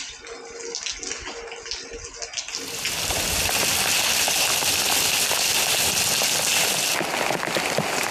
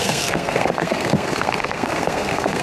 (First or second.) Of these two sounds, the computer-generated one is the second